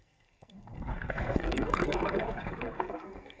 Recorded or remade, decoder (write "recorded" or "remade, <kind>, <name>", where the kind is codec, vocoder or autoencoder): remade, codec, SNAC